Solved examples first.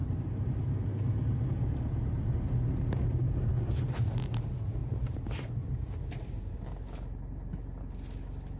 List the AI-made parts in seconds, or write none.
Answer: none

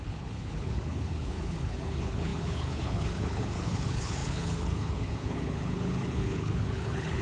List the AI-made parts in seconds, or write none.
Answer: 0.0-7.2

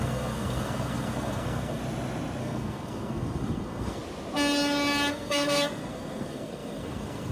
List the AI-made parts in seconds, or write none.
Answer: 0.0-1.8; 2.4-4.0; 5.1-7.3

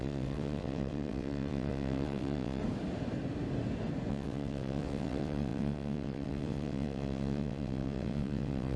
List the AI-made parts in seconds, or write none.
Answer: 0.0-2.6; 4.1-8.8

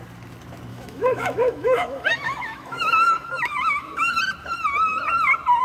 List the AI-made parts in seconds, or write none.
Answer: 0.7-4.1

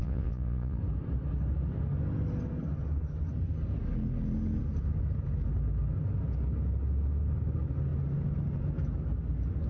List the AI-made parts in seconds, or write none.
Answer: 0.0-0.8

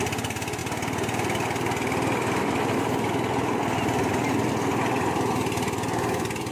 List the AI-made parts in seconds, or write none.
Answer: none